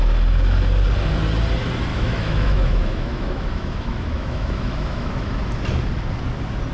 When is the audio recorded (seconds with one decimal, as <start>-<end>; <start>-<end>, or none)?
0.0-1.9; 5.3-6.7